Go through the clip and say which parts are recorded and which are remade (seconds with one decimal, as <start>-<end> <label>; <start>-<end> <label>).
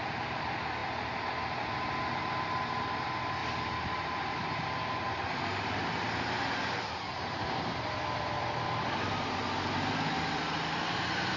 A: 0.0-0.8 remade; 0.8-2.1 recorded; 2.1-11.4 remade